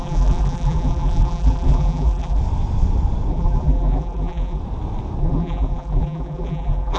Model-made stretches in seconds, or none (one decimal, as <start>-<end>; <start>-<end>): 0.0-2.4; 3.3-4.6; 5.2-7.0